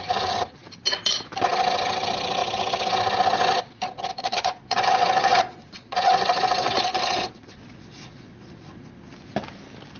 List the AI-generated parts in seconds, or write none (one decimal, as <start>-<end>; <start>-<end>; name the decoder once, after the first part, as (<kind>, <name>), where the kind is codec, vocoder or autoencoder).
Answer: 4.1-8.7 (vocoder, Vocos)